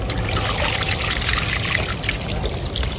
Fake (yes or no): no